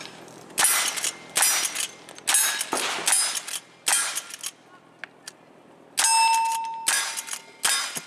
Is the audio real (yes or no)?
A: yes